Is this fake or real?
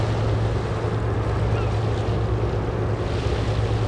real